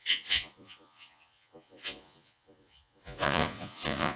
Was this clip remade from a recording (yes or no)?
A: yes